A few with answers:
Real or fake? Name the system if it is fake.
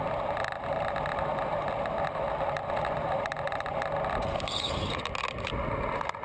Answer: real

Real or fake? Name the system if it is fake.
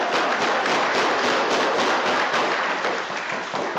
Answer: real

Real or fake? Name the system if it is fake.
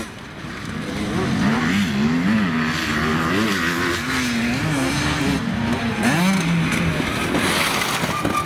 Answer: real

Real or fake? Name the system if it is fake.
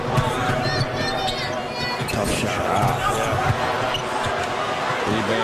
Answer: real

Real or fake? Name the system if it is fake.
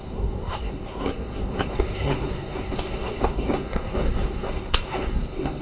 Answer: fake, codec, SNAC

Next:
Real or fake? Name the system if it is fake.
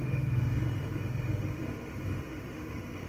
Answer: fake, autoencoder, DAC-VAE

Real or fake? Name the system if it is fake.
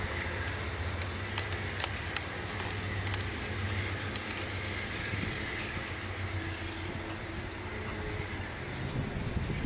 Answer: real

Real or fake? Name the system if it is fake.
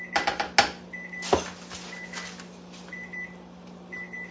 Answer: real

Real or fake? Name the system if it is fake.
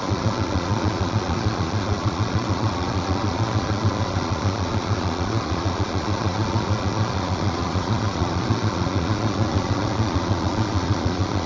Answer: fake, vocoder, Vocos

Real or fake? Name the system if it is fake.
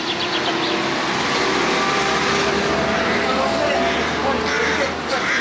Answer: real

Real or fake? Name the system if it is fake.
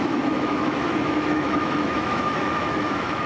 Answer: fake, autoencoder, DAC-VAE